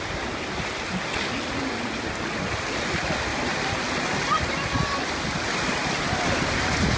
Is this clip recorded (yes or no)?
yes